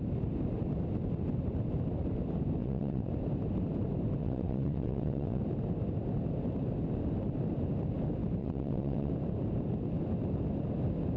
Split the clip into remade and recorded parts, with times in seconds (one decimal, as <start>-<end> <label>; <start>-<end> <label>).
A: 0.0-2.6 recorded; 2.6-3.1 remade; 3.1-4.2 recorded; 4.2-5.4 remade; 5.4-8.4 recorded; 8.4-9.1 remade; 9.1-11.2 recorded